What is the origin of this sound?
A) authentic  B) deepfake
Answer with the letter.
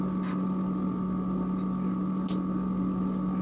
A